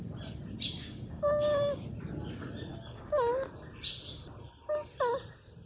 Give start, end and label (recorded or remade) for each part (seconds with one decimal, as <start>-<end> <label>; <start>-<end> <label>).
0.0-0.8 recorded; 0.8-1.9 remade; 1.9-2.7 recorded; 2.7-3.3 remade; 3.3-5.7 recorded